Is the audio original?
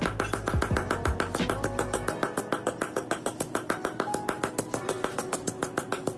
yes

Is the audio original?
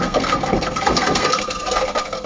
no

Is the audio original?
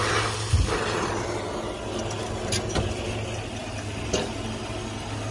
yes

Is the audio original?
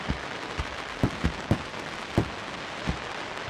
yes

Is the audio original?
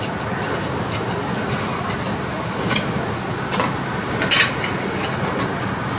yes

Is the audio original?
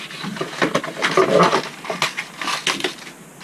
yes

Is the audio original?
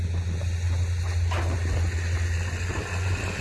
yes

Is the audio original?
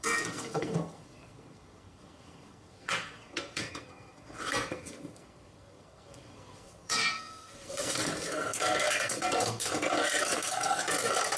no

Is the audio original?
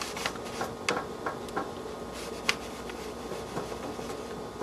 yes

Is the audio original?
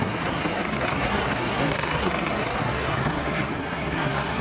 no